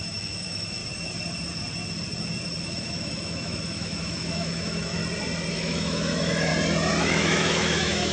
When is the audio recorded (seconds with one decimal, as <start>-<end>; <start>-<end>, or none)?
0.8-2.6; 5.0-5.5; 6.5-7.0